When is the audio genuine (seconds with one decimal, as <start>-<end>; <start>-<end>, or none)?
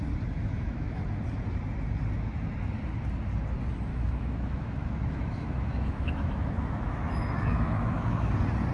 0.0-0.4; 1.0-3.9; 8.2-8.7